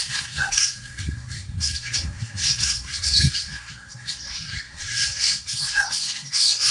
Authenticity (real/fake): fake